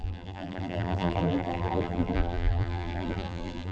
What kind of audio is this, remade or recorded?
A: remade